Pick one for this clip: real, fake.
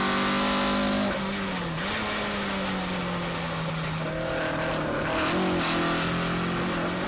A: real